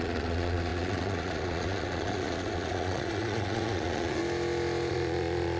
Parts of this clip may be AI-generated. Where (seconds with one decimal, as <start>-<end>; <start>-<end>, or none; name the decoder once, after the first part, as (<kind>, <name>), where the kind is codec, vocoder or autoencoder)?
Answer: 0.0-4.2 (vocoder, Vocos); 4.9-5.6